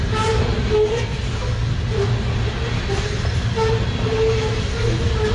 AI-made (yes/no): no